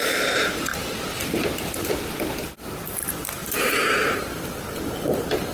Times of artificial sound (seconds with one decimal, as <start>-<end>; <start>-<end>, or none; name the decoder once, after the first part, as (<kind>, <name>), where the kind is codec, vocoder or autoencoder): 0.0-5.5 (vocoder, BigVGAN v2)